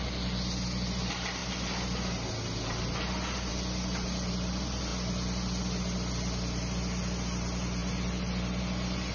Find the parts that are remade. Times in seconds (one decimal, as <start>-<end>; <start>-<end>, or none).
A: none